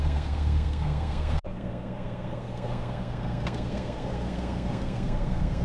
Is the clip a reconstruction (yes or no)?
yes